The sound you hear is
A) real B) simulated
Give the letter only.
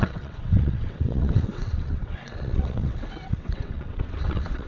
B